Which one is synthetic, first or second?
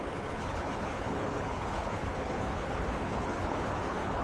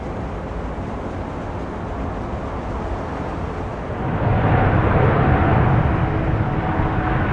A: first